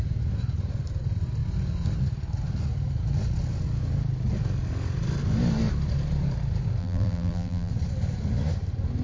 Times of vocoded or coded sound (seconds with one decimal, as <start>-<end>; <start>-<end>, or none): 6.8-7.7